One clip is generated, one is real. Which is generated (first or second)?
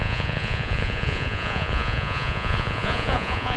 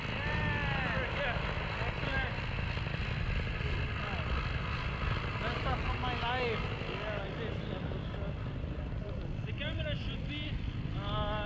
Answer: first